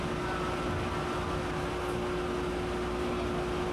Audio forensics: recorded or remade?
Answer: recorded